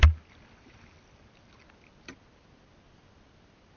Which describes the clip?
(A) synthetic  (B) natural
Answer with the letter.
B